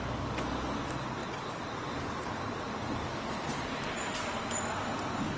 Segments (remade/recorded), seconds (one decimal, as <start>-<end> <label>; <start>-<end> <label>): 0.0-5.4 recorded